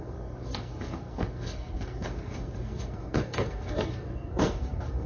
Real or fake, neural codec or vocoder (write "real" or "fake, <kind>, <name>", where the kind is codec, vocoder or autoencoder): fake, codec, SNAC